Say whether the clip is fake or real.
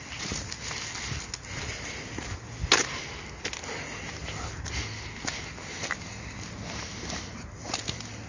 real